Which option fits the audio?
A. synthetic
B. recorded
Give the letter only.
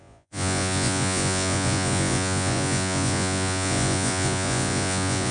A